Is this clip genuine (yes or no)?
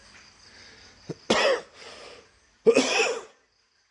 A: yes